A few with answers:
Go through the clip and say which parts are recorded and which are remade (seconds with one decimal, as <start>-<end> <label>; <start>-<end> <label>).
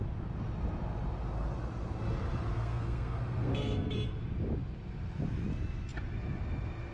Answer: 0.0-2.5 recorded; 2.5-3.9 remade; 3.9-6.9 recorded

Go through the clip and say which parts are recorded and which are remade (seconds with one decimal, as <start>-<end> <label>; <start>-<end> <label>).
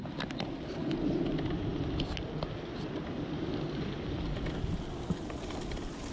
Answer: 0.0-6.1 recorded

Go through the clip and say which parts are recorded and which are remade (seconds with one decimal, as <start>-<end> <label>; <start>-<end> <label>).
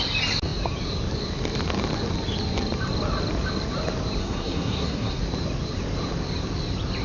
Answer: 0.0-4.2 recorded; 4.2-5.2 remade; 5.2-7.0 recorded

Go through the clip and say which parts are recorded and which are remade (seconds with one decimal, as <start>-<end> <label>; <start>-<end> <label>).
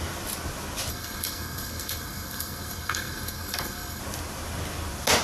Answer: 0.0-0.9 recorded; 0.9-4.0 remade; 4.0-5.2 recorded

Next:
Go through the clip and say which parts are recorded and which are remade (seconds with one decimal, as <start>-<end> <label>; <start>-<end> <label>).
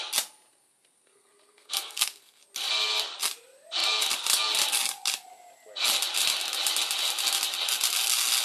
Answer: 0.0-0.5 recorded; 0.5-2.4 remade; 2.4-8.4 recorded